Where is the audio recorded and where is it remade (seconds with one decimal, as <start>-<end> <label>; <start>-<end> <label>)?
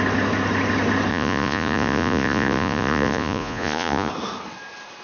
0.0-1.1 recorded; 1.1-4.1 remade; 4.1-5.0 recorded